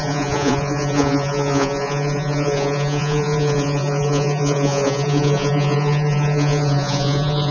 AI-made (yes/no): yes